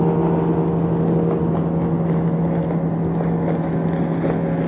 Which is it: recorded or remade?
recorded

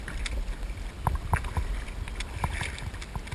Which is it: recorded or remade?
recorded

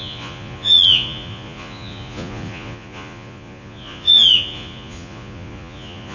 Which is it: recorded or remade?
remade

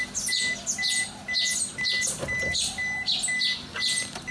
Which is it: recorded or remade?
recorded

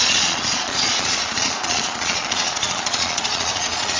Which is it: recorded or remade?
remade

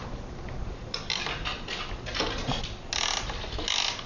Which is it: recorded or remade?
recorded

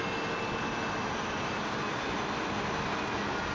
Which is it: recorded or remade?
recorded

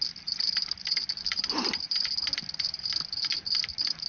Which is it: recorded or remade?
recorded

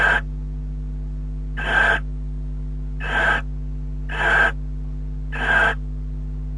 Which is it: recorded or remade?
recorded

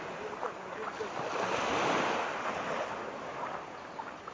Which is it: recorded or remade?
recorded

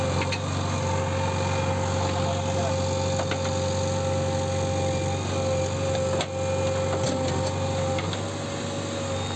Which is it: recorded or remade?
recorded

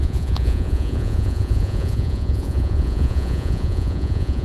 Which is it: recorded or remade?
remade